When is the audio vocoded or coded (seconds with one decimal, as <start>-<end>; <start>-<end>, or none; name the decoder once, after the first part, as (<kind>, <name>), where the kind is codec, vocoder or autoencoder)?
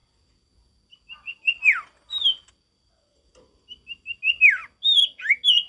none